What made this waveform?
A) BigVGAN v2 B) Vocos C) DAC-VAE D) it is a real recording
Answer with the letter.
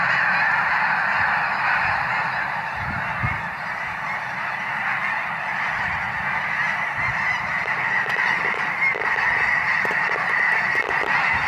D